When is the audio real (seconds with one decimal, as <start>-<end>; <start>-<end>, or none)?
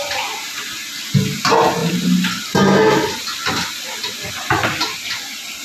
0.0-5.6